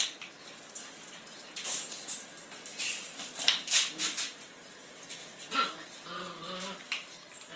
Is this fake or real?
real